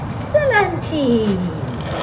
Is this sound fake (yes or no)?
no